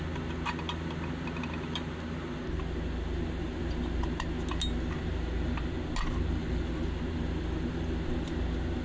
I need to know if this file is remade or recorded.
recorded